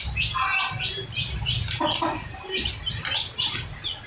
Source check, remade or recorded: recorded